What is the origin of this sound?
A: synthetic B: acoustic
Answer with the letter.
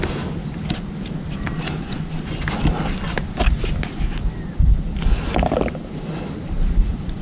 B